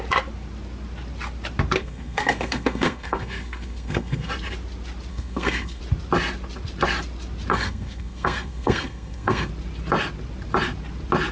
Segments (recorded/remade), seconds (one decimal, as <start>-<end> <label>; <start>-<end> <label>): 0.0-1.8 recorded; 1.8-4.3 remade; 4.3-5.1 recorded; 5.1-5.8 remade; 5.8-7.5 recorded; 7.5-9.5 remade; 9.5-11.3 recorded

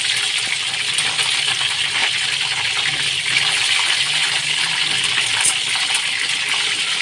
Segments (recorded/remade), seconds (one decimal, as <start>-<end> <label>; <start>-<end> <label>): 0.0-7.0 recorded

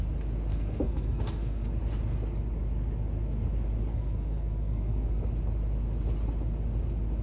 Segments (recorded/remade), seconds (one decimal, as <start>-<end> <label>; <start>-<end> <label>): 0.0-0.5 recorded; 0.5-1.7 remade; 1.7-3.9 recorded; 3.9-5.2 remade; 5.2-7.2 recorded

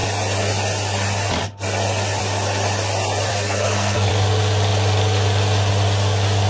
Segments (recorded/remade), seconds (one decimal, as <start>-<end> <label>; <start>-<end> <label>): 0.0-3.3 recorded; 3.3-4.1 remade; 4.1-6.5 recorded

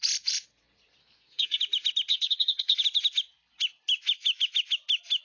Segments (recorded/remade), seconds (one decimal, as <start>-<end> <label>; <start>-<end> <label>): 0.0-1.0 recorded; 1.0-1.6 remade; 1.6-2.1 recorded; 2.1-2.8 remade; 2.8-5.2 recorded